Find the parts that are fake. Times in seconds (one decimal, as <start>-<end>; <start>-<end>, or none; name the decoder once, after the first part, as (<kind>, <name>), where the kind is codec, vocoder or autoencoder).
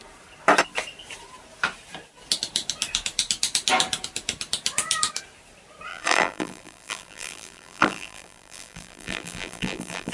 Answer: 5.9-10.1 (vocoder, BigVGAN v2)